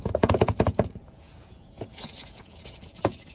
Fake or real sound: fake